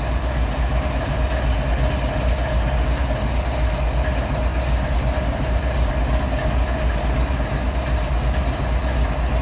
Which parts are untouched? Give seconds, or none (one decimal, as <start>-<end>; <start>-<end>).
0.0-4.5; 5.9-9.4